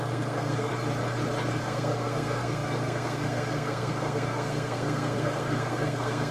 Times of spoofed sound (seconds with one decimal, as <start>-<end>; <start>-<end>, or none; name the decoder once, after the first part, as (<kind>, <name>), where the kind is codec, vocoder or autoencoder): 0.0-0.7 (codec, SNAC); 1.6-6.3